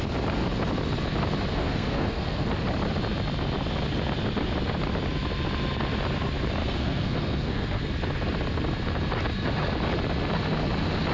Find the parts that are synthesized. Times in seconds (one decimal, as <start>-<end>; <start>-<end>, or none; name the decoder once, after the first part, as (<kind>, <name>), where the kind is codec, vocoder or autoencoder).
1.5-2.5 (codec, SNAC); 6.6-7.9